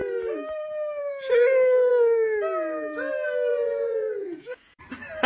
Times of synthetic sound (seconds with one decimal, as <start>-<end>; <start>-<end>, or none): 3.5-4.8